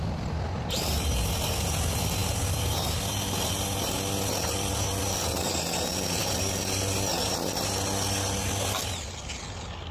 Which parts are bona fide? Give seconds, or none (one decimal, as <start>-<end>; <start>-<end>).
0.0-9.9

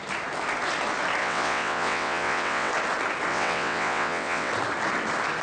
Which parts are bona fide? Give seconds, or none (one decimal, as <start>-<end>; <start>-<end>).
0.0-1.2; 2.7-3.3; 4.5-5.4

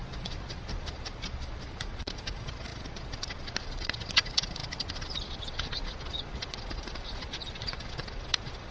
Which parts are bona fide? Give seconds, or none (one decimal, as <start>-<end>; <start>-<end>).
none

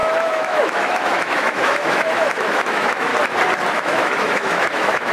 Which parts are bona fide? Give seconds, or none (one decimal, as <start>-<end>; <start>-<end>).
3.1-3.7